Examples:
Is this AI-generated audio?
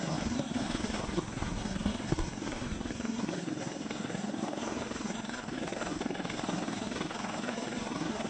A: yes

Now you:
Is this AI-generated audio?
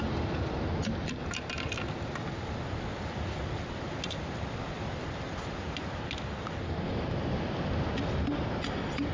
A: no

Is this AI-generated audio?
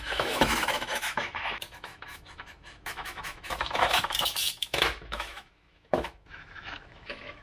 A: yes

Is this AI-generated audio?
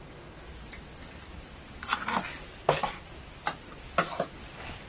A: no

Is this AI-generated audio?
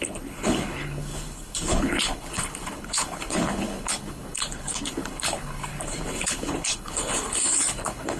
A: yes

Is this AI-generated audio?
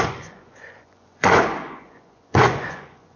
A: yes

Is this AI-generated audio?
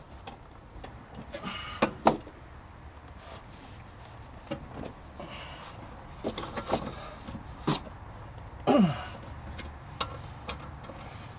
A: no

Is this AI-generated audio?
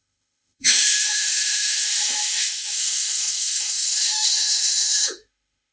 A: yes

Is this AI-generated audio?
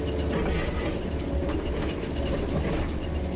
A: no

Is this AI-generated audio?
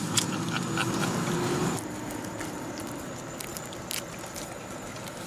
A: no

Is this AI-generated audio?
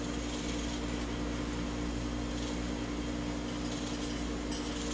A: no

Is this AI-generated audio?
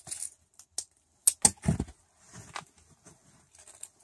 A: no